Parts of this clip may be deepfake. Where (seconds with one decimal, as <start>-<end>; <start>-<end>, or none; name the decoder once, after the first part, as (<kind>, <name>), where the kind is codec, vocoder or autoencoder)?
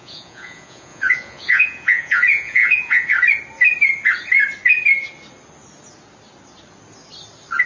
0.0-3.1 (vocoder, Vocos)